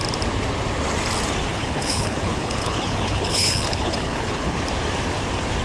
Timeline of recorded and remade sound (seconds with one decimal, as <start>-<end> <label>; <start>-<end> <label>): 0.0-1.5 recorded; 1.5-4.6 remade; 4.6-5.6 recorded